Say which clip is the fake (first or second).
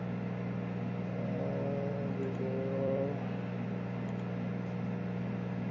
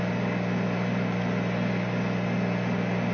first